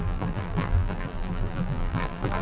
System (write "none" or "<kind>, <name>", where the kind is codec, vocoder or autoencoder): vocoder, BigVGAN v2